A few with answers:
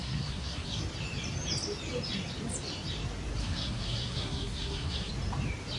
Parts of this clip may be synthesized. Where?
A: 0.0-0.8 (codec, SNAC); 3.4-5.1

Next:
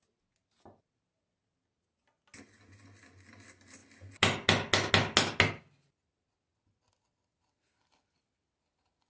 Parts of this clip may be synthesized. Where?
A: none